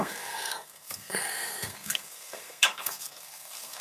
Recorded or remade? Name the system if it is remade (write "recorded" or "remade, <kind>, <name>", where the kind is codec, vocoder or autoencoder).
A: remade, codec, SNAC